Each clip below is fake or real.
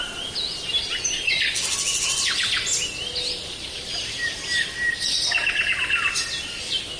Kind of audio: real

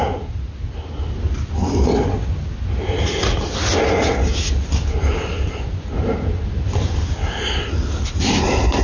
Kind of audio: real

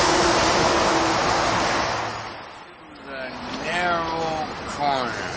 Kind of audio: real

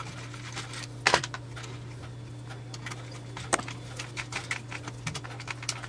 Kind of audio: real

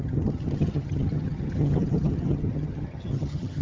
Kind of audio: fake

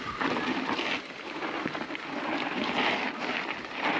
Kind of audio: real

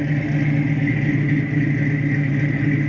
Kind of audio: real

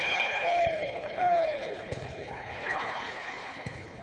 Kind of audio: fake